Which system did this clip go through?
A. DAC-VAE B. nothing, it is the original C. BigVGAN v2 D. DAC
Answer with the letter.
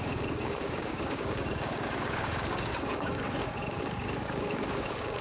D